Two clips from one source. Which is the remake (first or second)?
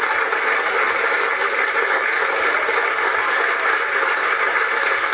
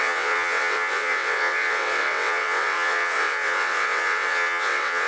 second